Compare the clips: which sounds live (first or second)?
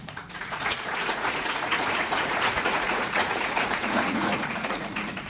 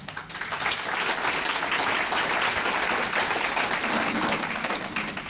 second